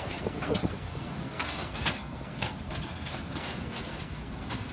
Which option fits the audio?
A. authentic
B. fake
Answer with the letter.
B